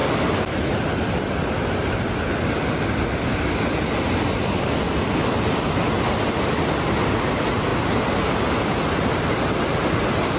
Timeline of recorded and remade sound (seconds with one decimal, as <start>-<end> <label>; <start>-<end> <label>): 0.0-10.4 recorded